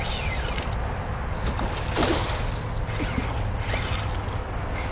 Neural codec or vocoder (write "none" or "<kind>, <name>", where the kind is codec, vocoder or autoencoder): none